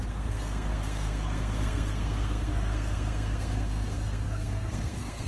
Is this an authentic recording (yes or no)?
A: no